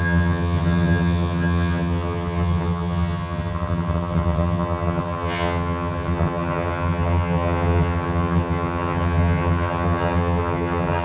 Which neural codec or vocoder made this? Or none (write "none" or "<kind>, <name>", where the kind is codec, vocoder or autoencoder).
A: vocoder, HiFi-GAN